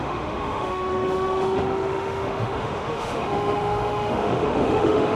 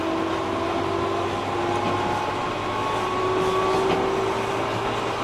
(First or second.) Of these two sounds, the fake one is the first